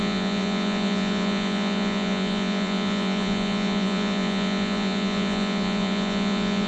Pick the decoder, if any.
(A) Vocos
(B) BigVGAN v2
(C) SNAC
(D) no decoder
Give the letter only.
A